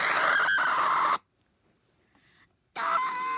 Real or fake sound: real